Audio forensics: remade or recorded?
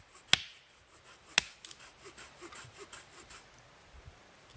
recorded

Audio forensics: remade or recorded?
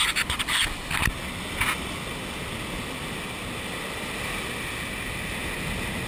recorded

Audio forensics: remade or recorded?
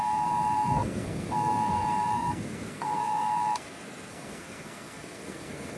remade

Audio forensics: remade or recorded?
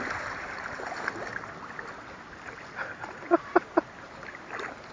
recorded